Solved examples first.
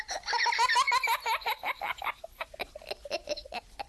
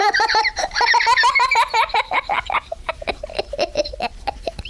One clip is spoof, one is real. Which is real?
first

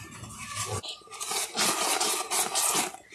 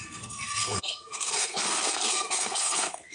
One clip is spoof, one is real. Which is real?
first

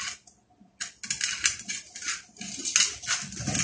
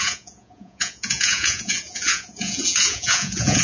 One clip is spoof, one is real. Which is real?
first